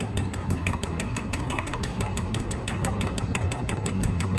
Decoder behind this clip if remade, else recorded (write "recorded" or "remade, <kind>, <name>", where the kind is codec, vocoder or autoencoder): remade, codec, SNAC